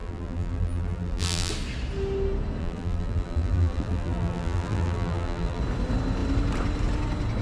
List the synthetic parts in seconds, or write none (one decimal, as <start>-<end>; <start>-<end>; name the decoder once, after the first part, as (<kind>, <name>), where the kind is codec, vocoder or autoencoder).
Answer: 0.0-1.5 (vocoder, BigVGAN v2); 2.6-5.6